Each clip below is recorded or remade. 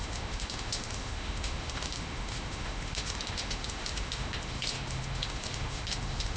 remade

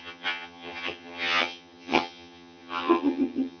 remade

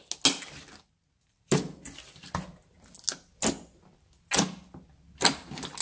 recorded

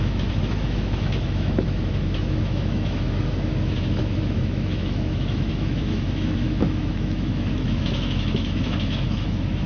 remade